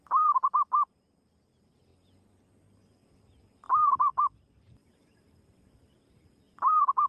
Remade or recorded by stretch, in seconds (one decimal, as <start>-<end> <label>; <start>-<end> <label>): 0.0-7.1 recorded